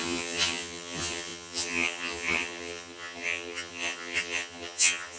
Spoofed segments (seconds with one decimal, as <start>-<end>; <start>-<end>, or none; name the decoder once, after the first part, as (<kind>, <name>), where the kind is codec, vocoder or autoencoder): 0.0-5.2 (vocoder, HiFi-GAN)